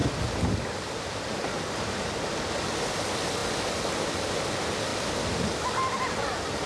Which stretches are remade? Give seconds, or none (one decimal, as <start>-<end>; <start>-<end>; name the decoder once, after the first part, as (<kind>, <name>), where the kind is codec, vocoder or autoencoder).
0.0-2.3 (vocoder, BigVGAN v2); 4.9-6.7